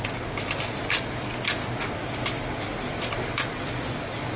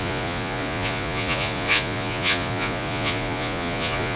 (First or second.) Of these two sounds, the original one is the first